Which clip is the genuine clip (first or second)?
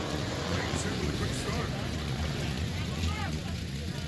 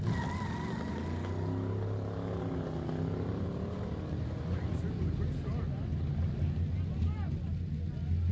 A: second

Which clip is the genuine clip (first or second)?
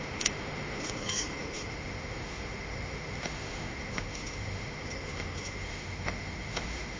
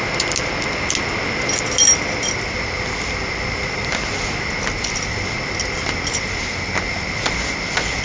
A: second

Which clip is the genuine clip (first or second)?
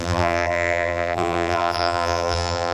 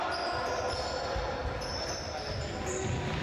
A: second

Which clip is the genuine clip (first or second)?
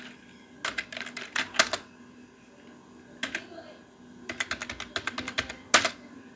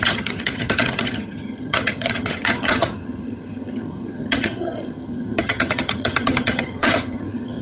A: first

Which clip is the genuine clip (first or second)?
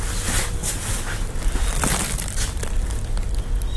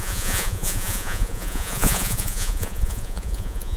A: first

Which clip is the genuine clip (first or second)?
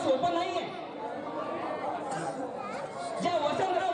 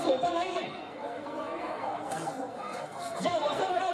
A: first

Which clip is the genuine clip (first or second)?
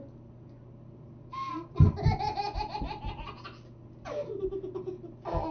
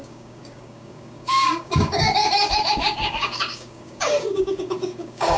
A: first